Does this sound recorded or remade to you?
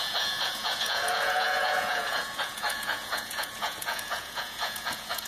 remade